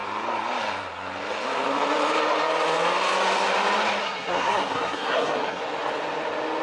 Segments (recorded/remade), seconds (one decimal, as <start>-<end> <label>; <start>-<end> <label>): 0.0-4.0 recorded; 4.0-5.6 remade; 5.6-6.6 recorded